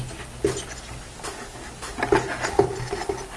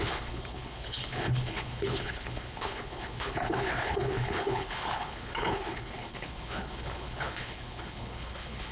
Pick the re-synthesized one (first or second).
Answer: second